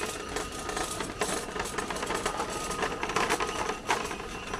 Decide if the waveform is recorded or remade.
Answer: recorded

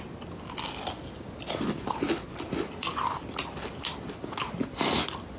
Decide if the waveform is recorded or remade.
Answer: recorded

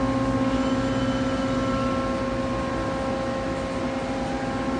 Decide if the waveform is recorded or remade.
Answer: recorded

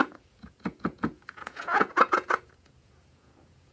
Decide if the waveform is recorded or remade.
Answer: remade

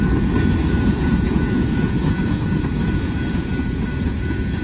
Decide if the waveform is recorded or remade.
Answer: remade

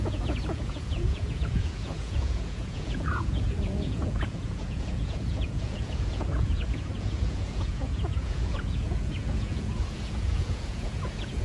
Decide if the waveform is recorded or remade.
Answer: remade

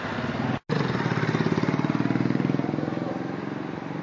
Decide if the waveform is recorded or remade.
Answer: recorded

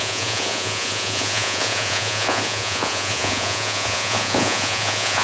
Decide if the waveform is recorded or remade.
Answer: remade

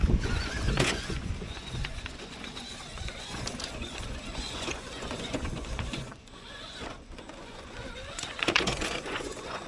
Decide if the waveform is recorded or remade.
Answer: remade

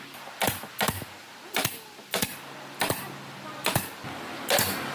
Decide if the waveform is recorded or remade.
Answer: recorded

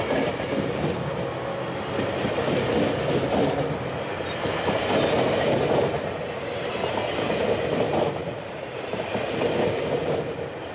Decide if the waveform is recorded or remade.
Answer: recorded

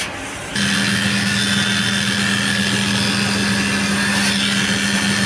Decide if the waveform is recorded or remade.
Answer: recorded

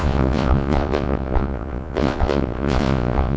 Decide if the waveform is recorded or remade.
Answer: remade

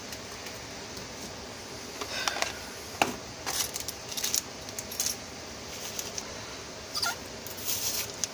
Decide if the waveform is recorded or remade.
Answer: recorded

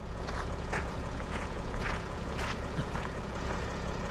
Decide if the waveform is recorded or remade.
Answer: remade